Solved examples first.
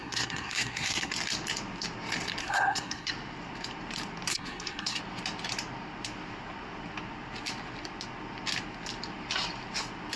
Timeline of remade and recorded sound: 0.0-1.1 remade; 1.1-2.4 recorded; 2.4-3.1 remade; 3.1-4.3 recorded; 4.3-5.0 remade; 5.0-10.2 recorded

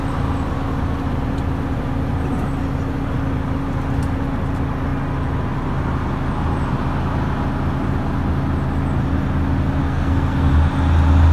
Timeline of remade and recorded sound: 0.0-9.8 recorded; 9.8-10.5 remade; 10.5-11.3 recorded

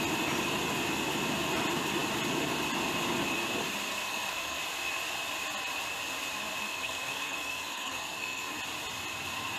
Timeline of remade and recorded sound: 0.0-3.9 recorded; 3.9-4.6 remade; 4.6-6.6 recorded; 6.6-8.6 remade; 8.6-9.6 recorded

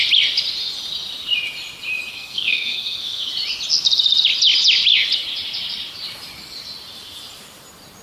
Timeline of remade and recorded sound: 0.0-2.1 recorded; 2.1-3.3 remade; 3.3-8.0 recorded